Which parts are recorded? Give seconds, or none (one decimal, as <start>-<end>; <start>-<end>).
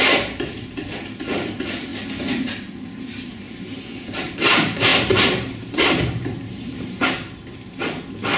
1.9-2.8; 7.8-8.4